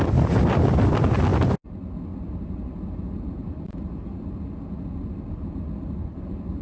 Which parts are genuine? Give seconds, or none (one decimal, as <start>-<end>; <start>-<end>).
0.0-6.6